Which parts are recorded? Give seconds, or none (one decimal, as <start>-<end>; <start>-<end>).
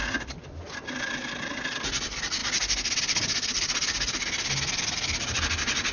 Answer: 2.4-3.1